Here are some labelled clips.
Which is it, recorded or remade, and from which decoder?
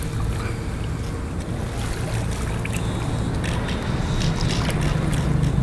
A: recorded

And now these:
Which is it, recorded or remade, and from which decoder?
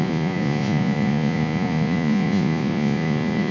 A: remade, vocoder, Vocos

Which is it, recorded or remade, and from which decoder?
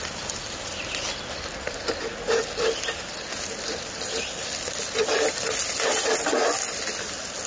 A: recorded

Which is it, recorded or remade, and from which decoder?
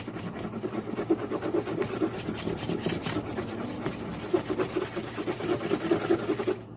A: recorded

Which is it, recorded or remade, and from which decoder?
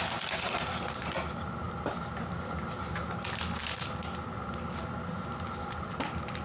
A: recorded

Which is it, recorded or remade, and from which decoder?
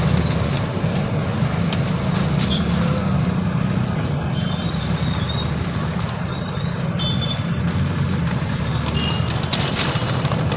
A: recorded